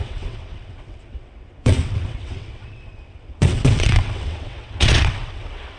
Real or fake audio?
fake